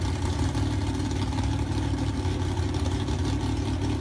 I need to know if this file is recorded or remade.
recorded